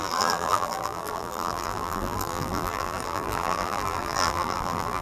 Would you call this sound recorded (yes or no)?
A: no